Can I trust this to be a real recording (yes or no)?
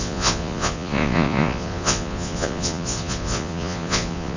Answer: no